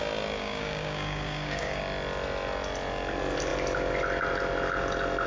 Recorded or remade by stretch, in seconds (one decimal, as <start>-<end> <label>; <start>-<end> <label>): 0.0-0.4 recorded; 0.4-1.8 remade; 1.8-5.3 recorded